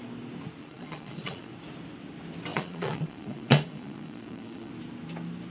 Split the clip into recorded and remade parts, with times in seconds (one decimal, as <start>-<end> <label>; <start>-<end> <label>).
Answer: 0.0-0.6 recorded; 0.6-1.5 remade; 1.5-2.5 recorded; 2.5-4.7 remade; 4.7-5.5 recorded